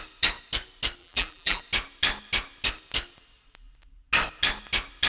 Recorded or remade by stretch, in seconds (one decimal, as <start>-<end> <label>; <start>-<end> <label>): 0.0-1.0 recorded; 1.0-1.6 remade; 1.6-5.1 recorded